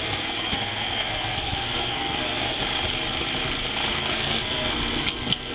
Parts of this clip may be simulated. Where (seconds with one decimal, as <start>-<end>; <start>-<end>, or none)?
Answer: 0.0-2.6; 3.9-5.5